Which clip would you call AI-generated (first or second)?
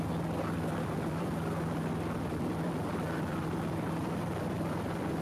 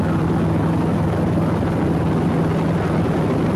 first